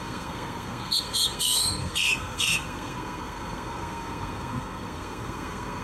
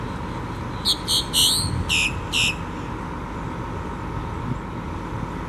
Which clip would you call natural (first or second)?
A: second